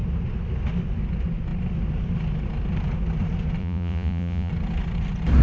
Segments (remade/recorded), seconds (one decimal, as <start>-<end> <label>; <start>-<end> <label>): 0.0-3.6 recorded; 3.6-4.5 remade; 4.5-5.4 recorded